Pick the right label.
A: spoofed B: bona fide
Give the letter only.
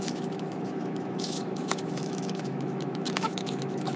A